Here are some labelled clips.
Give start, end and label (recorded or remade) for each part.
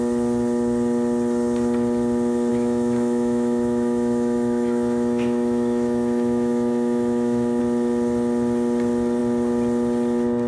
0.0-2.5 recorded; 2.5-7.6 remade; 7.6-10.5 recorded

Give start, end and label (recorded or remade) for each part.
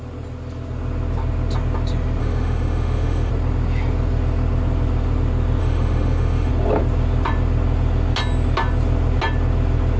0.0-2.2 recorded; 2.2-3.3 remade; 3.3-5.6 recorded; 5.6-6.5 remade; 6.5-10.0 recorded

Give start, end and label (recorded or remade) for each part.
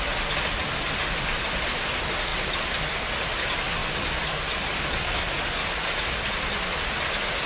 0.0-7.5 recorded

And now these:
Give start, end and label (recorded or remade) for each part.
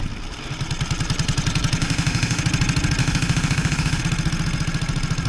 0.0-1.8 recorded; 1.8-2.4 remade; 2.4-3.0 recorded; 3.0-4.0 remade; 4.0-5.3 recorded